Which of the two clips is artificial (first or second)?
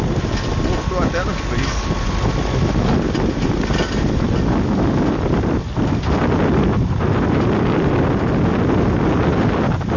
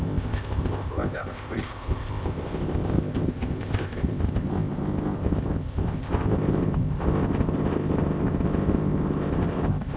second